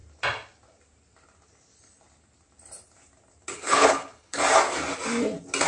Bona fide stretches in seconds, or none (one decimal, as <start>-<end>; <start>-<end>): 0.0-3.5; 4.4-5.7